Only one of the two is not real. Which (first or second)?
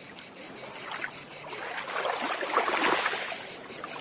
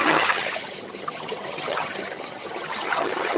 second